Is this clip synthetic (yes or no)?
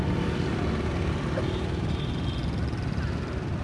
no